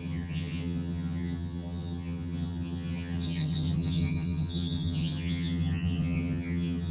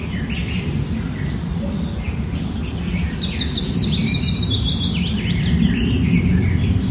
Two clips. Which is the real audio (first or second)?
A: second